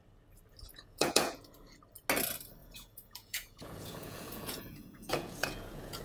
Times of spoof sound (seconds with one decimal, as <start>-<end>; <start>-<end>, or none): 0.7-1.4; 2.6-6.0